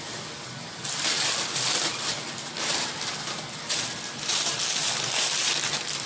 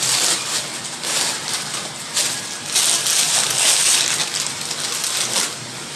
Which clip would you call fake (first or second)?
first